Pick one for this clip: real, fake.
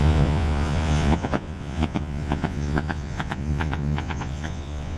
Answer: fake